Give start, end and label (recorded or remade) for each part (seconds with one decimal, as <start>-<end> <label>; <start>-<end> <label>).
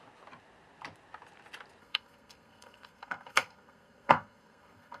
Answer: 0.0-1.8 recorded; 1.8-5.0 remade